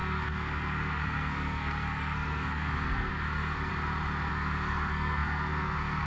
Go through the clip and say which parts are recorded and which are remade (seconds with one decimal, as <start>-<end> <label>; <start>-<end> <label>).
0.0-3.7 remade; 3.7-4.3 recorded; 4.3-6.1 remade